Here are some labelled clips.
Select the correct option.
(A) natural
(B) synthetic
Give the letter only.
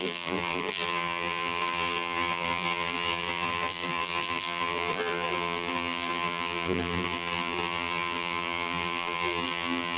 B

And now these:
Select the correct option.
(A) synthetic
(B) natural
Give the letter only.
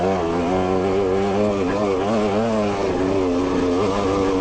B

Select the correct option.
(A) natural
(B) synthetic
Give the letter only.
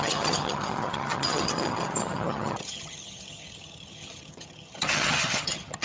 B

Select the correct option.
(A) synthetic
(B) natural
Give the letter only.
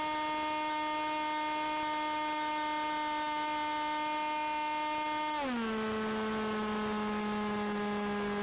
B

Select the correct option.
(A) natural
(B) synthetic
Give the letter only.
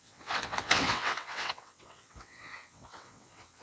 B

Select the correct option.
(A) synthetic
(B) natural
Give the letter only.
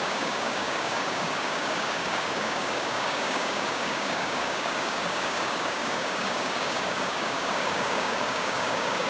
A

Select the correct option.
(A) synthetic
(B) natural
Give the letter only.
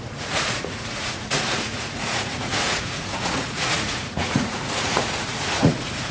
A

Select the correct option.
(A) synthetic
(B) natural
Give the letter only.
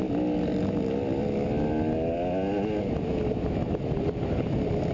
B